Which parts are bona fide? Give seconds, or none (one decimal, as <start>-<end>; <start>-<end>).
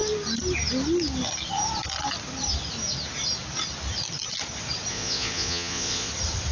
0.0-4.9; 6.1-6.5